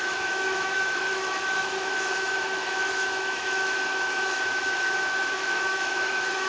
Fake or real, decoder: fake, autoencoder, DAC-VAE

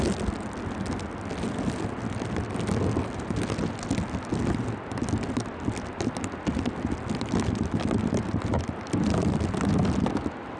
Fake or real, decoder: real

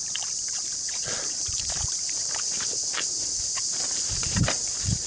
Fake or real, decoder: fake, vocoder, BigVGAN v2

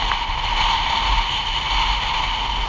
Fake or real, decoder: real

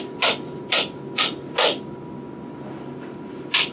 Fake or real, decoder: real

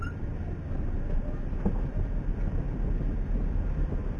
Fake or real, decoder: real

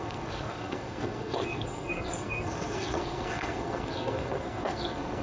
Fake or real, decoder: fake, codec, SNAC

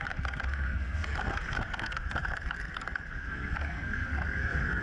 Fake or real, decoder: fake, codec, SNAC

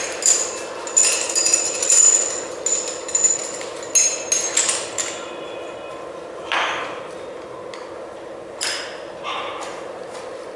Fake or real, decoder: real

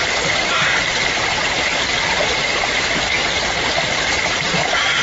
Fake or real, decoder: fake, vocoder, BigVGAN v2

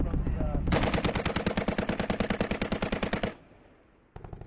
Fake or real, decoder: real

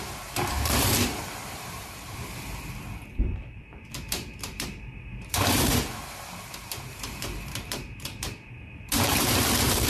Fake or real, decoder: fake, vocoder, BigVGAN v2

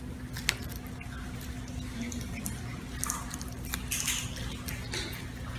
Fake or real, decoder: real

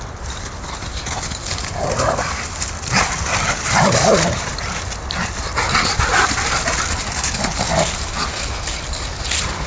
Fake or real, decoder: real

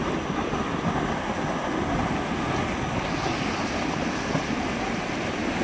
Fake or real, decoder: real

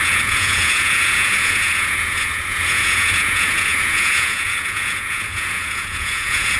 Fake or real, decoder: fake, vocoder, Vocos